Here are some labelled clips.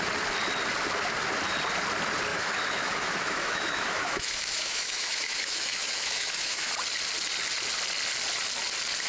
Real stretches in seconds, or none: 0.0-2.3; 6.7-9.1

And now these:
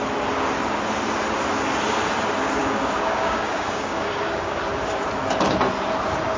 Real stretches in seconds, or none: 0.0-2.6; 4.6-6.4